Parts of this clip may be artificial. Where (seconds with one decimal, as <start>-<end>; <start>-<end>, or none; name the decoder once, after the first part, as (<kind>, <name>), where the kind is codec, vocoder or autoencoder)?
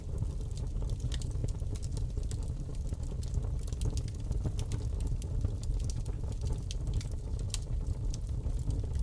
none